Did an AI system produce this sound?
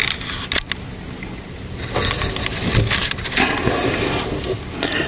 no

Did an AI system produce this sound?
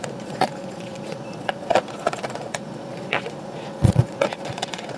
yes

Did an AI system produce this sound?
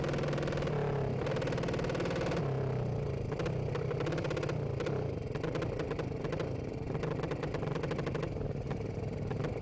no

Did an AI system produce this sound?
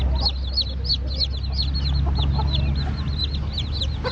no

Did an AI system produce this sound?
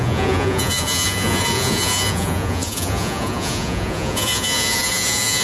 yes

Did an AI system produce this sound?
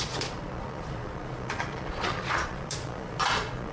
yes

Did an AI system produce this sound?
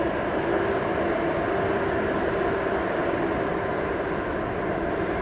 no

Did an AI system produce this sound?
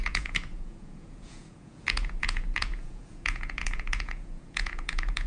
yes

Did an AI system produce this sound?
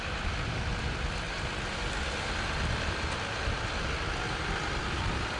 no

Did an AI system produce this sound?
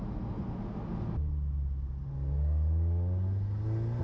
no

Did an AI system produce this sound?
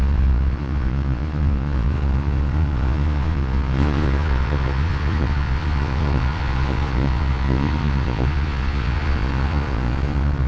yes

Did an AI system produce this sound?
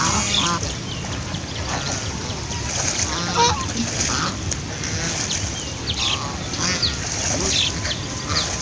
no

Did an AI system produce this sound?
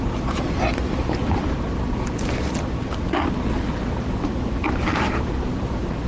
no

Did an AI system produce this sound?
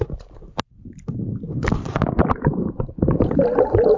no